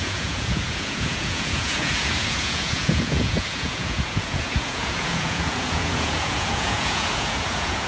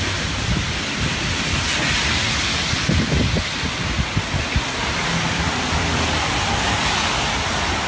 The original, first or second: second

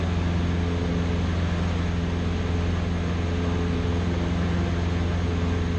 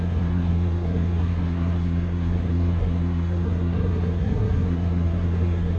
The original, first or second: first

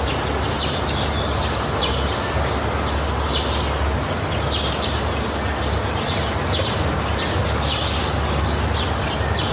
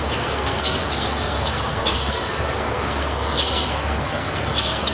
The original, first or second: first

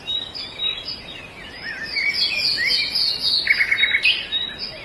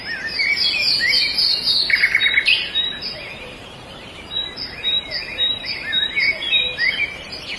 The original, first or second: first